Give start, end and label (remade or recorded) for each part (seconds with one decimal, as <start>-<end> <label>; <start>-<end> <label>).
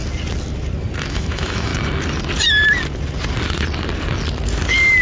0.0-1.1 recorded; 1.1-1.7 remade; 1.7-5.0 recorded